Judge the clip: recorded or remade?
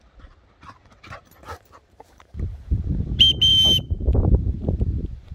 remade